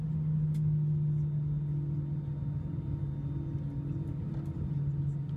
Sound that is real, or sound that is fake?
real